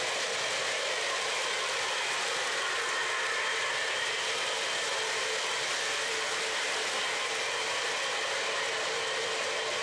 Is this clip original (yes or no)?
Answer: yes